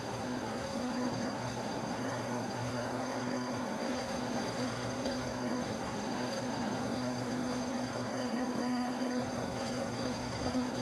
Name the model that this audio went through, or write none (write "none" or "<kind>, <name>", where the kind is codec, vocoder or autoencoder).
codec, SNAC